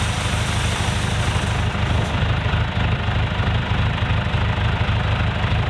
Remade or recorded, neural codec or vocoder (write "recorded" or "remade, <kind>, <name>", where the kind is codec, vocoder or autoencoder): recorded